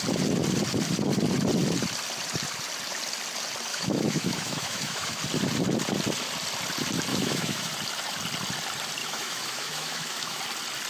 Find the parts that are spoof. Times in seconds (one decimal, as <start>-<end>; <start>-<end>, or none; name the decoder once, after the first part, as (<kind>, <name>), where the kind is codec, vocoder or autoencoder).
3.7-5.2 (autoencoder, DAC-VAE); 7.1-7.7; 9.0-10.4